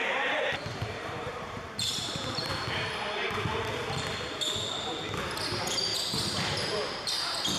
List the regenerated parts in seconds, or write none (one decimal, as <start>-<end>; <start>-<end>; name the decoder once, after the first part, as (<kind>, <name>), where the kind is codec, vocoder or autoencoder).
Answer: 0.0-2.5 (vocoder, BigVGAN v2)